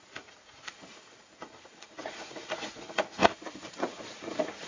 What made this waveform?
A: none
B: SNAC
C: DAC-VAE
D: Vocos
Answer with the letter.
D